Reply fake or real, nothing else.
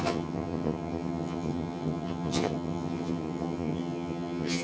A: fake